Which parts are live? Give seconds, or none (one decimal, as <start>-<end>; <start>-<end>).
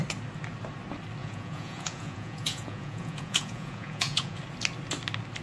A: 0.0-1.2; 4.4-5.4